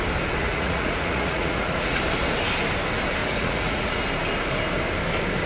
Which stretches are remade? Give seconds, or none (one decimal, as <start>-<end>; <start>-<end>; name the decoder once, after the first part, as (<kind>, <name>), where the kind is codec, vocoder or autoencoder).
0.4-2.0 (vocoder, Vocos); 3.2-4.0